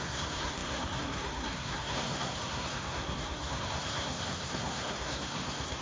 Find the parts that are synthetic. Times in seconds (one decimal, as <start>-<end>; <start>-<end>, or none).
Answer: 0.0-5.8